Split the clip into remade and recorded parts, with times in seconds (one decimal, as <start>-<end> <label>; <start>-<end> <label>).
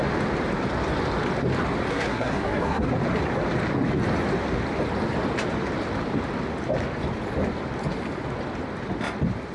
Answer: 0.0-1.9 recorded; 1.9-2.9 remade; 2.9-9.5 recorded